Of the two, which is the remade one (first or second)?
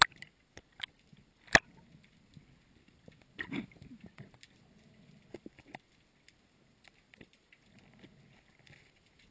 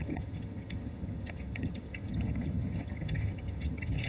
second